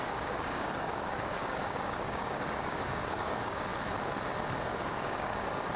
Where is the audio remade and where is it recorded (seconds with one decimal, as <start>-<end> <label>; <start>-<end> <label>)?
0.0-3.7 remade; 3.7-4.6 recorded; 4.6-5.8 remade